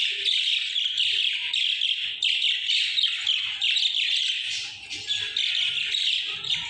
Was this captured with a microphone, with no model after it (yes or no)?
yes